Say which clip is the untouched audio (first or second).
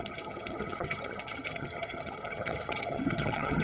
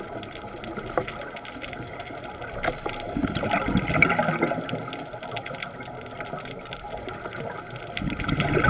second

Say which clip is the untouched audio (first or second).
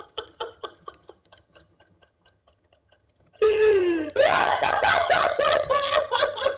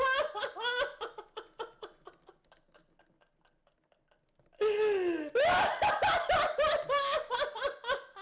second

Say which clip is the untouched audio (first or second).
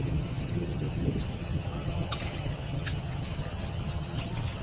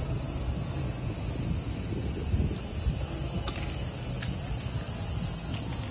second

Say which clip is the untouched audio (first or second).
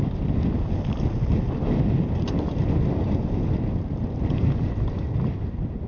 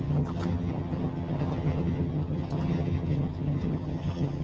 first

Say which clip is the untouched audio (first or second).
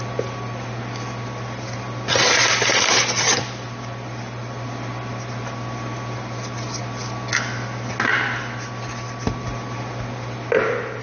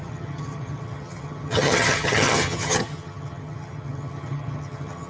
first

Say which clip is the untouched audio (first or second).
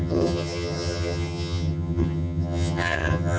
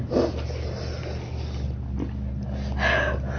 second